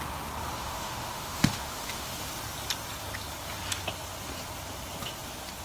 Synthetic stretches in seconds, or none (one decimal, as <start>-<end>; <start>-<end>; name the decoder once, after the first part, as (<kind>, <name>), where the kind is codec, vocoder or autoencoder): 0.6-2.1 (autoencoder, DAC-VAE)